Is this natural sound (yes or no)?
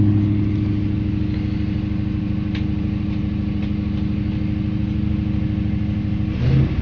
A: yes